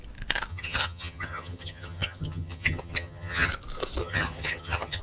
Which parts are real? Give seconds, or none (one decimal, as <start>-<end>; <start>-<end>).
0.0-0.5; 3.5-4.0